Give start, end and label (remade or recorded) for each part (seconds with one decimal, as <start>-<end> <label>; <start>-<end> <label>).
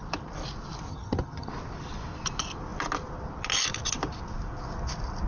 0.0-0.9 recorded; 0.9-1.5 remade; 1.5-5.3 recorded